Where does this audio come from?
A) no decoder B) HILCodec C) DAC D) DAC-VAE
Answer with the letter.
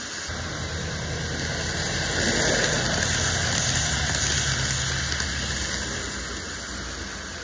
A